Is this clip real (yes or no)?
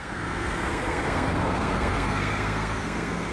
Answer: no